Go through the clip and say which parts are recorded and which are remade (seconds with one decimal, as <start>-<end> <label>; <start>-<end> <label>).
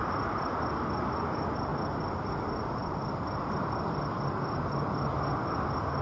0.0-1.7 recorded; 1.7-2.3 remade; 2.3-2.8 recorded; 2.8-5.1 remade; 5.1-6.0 recorded